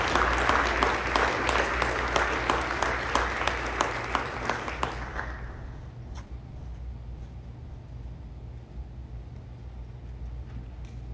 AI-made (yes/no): no